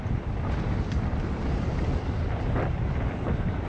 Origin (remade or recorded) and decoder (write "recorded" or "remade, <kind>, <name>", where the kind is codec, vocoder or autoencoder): recorded